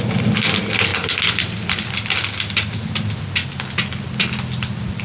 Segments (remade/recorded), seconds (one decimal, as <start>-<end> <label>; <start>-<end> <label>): 0.0-5.0 recorded

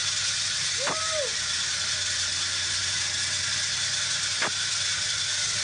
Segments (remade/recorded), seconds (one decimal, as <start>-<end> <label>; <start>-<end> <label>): 0.0-5.6 recorded